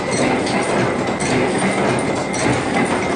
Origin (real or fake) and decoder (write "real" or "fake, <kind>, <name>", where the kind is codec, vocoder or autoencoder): real